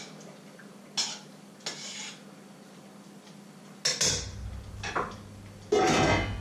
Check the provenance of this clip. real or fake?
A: real